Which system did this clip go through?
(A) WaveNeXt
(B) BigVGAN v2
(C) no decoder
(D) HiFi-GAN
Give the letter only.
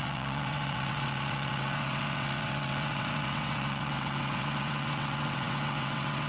A